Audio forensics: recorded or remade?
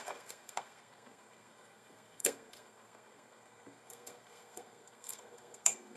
remade